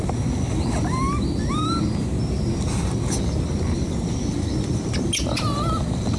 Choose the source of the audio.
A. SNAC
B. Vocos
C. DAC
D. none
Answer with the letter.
D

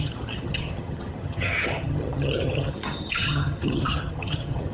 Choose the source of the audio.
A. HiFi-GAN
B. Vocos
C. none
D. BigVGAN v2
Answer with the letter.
A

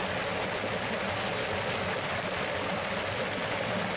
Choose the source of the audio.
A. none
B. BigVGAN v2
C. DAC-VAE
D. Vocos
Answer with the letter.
A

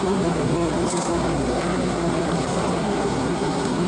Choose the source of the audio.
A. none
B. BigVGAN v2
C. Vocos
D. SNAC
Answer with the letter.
D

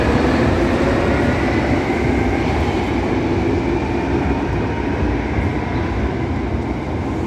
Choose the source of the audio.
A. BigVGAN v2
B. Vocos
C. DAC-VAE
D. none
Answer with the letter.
D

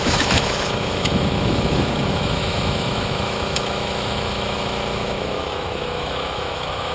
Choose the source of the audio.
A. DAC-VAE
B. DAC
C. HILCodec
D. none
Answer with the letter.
A